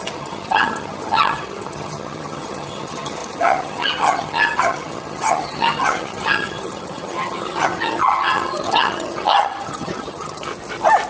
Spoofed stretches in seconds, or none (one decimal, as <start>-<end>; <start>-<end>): 0.0-10.5